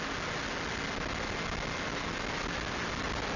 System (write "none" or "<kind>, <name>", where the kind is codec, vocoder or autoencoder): none